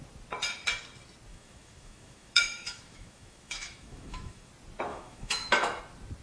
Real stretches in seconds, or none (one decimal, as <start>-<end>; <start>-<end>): 0.0-1.3; 4.5-4.9; 5.8-6.2